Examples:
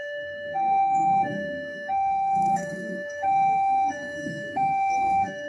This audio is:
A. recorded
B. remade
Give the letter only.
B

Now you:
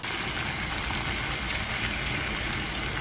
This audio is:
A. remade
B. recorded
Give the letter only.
B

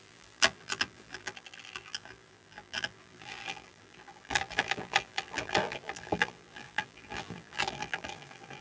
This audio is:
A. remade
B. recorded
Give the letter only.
A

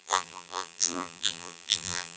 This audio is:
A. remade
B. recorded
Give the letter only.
A